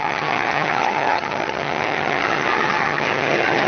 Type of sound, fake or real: fake